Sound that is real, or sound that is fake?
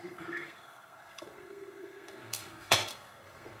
fake